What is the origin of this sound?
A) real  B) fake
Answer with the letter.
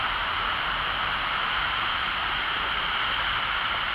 B